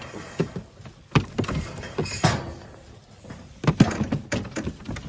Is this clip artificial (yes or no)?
no